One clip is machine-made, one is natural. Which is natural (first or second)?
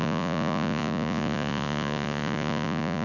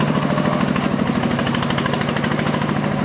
second